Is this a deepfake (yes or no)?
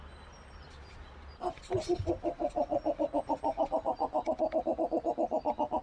no